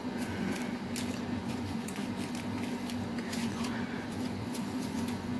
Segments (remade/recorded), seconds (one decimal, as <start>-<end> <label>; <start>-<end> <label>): 0.0-0.6 remade; 0.6-1.4 recorded; 1.4-2.0 remade; 2.0-3.1 recorded; 3.1-5.4 remade